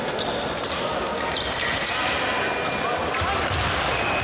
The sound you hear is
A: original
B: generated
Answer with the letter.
A